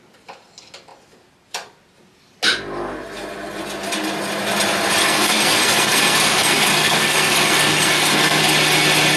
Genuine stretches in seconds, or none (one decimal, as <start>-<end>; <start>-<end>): 0.0-5.0; 8.4-9.2